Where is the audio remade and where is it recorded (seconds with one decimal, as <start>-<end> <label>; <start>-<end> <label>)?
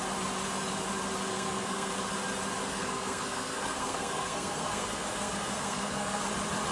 0.0-1.3 recorded; 1.3-1.9 remade; 1.9-2.7 recorded; 2.7-6.3 remade; 6.3-6.7 recorded